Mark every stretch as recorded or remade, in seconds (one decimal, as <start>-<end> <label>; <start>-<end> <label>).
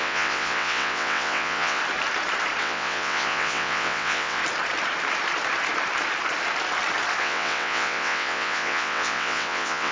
0.0-1.8 remade; 1.8-2.6 recorded; 2.6-4.4 remade; 4.4-7.2 recorded; 7.2-9.9 remade